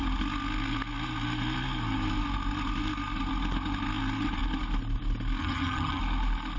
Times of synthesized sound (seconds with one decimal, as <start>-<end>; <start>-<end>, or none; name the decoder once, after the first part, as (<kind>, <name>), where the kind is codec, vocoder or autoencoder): 5.4-6.0 (vocoder, HiFi-GAN)